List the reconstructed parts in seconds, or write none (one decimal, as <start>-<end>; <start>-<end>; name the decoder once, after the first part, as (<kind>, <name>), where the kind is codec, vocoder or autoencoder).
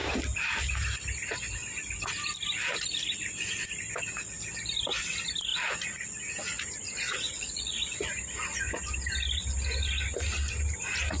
6.9-7.8 (vocoder, Vocos)